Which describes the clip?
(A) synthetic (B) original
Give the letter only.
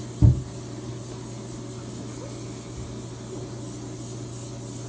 B